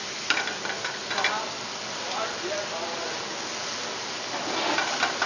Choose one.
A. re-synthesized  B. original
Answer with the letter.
B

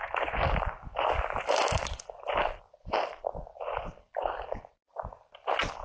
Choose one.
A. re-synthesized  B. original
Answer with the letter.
B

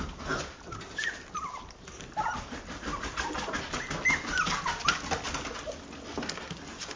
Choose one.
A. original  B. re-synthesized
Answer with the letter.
A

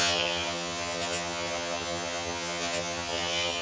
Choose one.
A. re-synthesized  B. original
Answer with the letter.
A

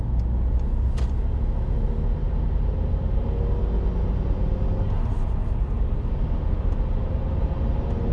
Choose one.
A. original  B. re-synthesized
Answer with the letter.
A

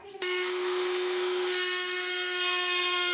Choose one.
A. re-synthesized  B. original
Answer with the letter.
A